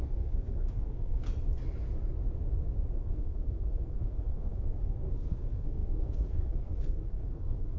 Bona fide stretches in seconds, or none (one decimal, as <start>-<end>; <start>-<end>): 1.2-3.0